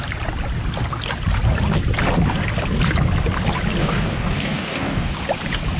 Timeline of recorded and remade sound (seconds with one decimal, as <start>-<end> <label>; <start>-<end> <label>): 0.0-3.8 recorded; 3.8-5.1 remade; 5.1-5.8 recorded